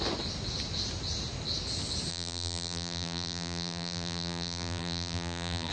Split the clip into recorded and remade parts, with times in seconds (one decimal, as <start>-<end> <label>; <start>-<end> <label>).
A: 0.0-2.1 recorded; 2.1-5.7 remade